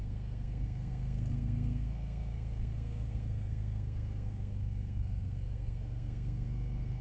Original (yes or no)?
no